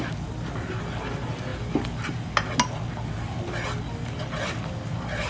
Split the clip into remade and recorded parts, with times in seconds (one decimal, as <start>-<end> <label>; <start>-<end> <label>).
0.0-5.3 recorded